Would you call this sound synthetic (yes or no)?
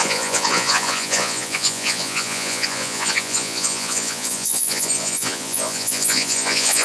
yes